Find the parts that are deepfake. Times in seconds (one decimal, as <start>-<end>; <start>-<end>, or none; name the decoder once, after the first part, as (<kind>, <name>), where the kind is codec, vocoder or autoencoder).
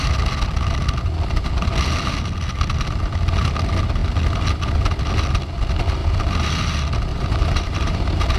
6.0-6.5 (vocoder, BigVGAN v2); 7.1-8.4